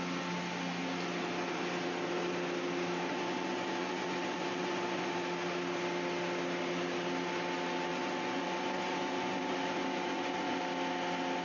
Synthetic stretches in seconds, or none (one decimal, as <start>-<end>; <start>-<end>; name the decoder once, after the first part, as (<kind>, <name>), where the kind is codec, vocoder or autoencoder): 3.1-5.1 (vocoder, Vocos); 7.9-10.6